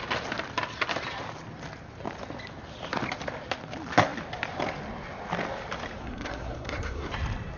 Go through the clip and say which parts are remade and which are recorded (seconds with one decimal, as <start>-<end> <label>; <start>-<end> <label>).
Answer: 0.0-6.0 recorded; 6.0-7.1 remade; 7.1-7.6 recorded